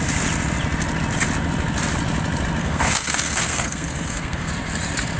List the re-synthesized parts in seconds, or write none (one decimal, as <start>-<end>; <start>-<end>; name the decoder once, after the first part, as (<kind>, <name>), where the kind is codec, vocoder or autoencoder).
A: 2.6-4.5 (codec, SNAC)